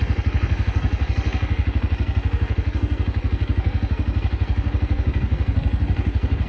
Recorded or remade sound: remade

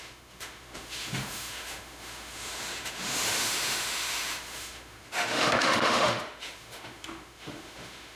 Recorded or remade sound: remade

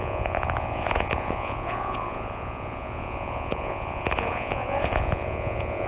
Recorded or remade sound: remade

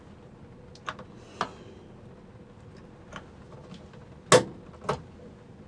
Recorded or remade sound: recorded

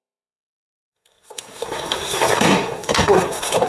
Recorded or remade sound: remade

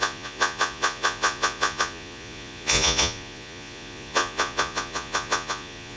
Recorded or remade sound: remade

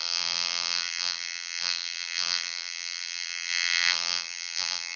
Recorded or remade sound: remade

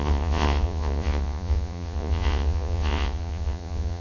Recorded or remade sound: remade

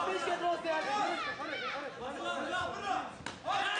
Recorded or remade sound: recorded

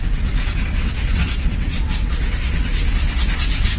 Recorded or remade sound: remade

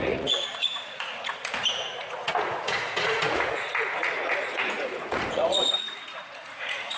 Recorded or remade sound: remade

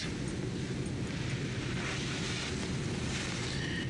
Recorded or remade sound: recorded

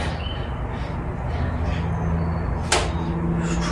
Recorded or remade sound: recorded